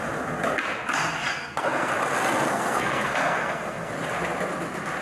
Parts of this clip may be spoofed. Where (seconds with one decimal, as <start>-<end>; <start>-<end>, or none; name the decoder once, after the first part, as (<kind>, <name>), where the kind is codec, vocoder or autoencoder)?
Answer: 1.3-1.9 (codec, SNAC); 2.5-3.9